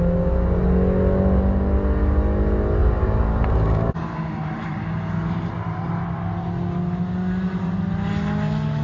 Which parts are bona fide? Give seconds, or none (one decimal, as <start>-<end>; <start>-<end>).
0.0-2.8; 4.8-8.8